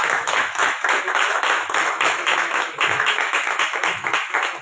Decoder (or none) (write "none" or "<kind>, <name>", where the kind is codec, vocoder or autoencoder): autoencoder, DAC-VAE